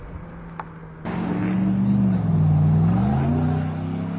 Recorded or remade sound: recorded